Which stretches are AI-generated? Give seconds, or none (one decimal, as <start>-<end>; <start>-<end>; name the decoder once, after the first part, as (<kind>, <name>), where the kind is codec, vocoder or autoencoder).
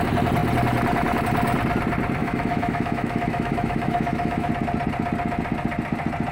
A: 2.2-4.5 (autoencoder, DAC-VAE)